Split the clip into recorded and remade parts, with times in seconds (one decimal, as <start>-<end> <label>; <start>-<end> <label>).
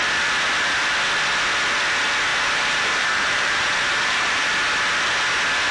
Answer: 0.0-2.3 recorded; 2.3-4.5 remade; 4.5-5.7 recorded